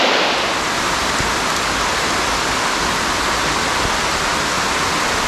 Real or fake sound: real